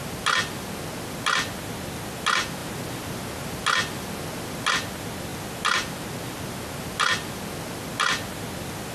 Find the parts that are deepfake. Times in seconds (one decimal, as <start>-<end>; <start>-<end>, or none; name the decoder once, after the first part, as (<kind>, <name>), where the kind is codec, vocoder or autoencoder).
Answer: none